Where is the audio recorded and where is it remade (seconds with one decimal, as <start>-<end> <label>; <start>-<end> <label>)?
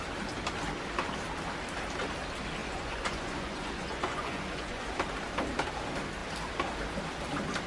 0.0-2.6 recorded; 2.6-4.9 remade; 4.9-7.7 recorded